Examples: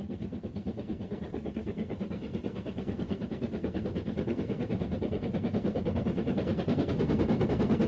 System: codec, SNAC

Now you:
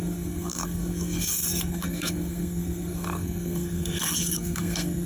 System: codec, SNAC